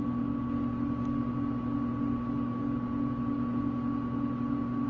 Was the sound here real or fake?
real